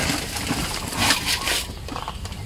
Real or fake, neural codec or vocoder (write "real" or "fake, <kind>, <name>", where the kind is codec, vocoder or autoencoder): real